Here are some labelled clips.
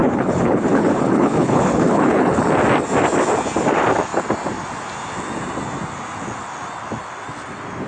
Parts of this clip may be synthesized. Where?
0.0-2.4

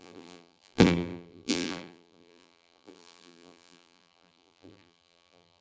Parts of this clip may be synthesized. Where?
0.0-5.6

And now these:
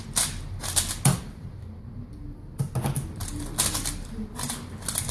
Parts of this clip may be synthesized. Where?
none

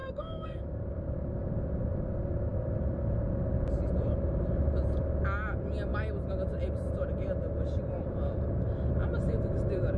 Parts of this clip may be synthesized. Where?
0.0-0.6